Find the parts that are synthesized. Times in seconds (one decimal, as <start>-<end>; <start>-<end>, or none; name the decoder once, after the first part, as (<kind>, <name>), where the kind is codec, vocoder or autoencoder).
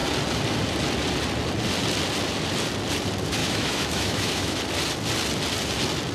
3.4-4.6 (autoencoder, DAC-VAE)